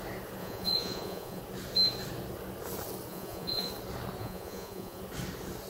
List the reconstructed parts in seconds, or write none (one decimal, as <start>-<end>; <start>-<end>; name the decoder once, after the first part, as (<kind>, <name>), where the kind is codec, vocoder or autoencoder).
0.4-1.4 (vocoder, Vocos); 3.1-3.7; 4.2-5.0